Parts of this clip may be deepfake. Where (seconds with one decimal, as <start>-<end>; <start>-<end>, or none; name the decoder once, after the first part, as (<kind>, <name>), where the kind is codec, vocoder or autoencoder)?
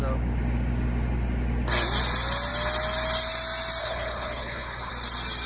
3.8-4.9 (codec, HILCodec)